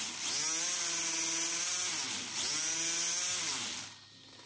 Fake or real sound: real